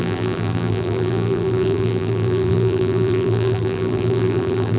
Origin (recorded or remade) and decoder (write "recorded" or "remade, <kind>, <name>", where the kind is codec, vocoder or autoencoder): remade, vocoder, BigVGAN v2